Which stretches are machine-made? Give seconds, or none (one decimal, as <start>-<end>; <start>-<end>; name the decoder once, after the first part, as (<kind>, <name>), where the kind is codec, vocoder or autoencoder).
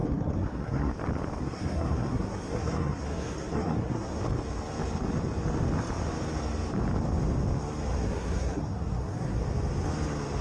0.0-0.9 (codec, SNAC); 1.4-4.2; 8.0-9.4